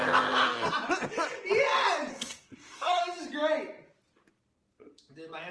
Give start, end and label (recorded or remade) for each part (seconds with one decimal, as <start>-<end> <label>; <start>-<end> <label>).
0.0-2.1 recorded; 2.1-3.0 remade; 3.0-5.5 recorded